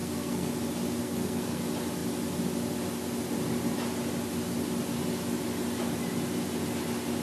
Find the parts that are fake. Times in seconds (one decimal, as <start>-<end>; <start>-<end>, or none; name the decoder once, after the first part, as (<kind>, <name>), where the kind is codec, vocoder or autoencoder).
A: 0.0-0.5 (codec, SNAC); 1.0-1.6